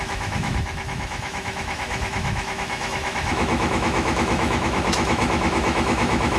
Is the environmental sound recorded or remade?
remade